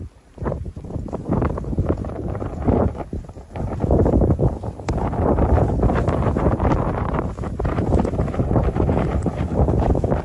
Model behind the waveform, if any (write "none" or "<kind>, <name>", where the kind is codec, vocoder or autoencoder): vocoder, BigVGAN v2